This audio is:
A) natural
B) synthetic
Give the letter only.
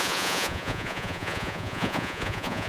B